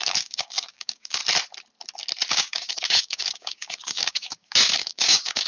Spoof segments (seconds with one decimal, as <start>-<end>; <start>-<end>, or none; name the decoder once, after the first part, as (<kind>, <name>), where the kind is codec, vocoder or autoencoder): 0.0-1.2 (codec, DAC); 2.3-5.5